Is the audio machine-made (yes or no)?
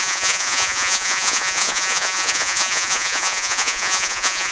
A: yes